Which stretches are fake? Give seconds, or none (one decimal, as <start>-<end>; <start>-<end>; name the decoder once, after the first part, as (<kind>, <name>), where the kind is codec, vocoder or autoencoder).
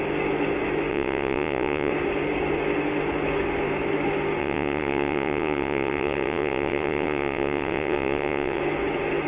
0.9-1.9 (vocoder, WaveNeXt); 4.4-8.6